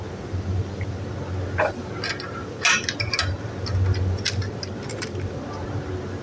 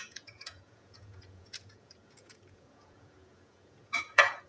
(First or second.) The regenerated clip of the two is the second